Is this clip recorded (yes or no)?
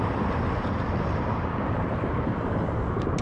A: yes